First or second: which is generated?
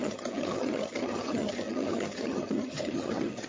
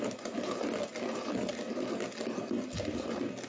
first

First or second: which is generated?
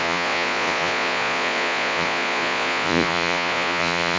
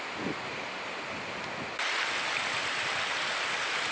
first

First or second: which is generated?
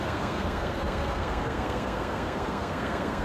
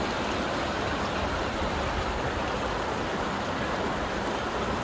first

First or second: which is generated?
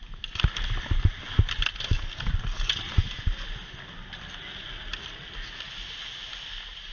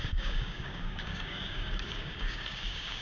second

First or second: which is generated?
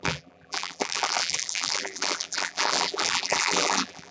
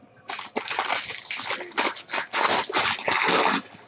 first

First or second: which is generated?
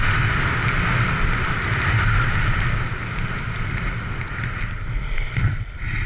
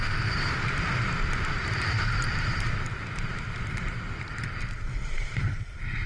second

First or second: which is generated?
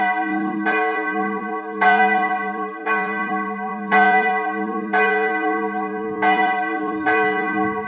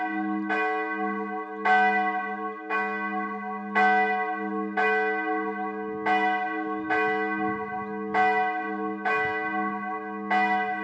first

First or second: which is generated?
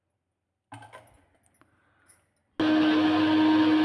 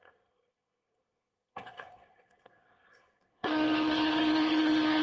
second